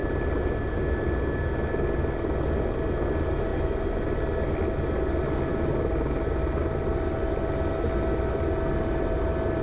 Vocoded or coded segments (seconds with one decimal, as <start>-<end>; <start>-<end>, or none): none